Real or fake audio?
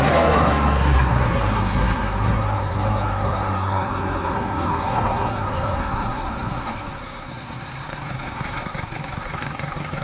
fake